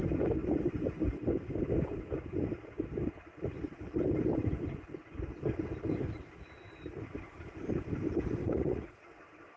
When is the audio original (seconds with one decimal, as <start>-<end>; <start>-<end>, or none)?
0.0-8.4; 9.0-9.6